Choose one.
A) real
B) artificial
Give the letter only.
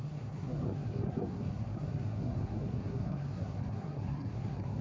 B